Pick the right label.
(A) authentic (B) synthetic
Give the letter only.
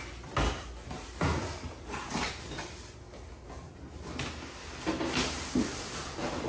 A